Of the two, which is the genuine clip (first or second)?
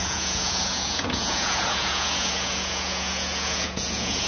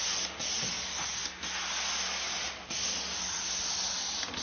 second